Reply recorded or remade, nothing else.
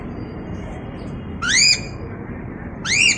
remade